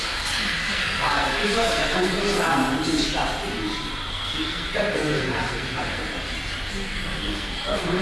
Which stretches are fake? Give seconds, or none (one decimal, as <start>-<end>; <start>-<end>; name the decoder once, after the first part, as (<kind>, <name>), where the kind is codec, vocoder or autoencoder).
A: 0.0-2.6 (codec, SNAC); 4.1-6.0; 6.7-8.0